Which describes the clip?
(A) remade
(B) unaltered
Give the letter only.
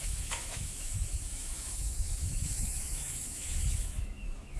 A